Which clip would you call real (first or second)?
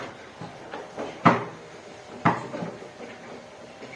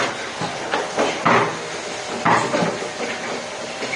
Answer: second